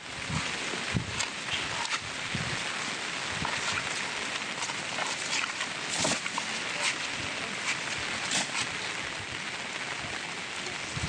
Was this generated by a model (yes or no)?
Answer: no